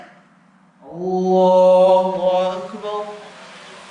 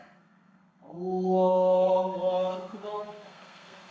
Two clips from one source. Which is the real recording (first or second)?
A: first